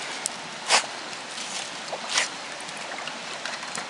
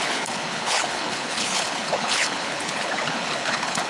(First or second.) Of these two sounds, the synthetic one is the second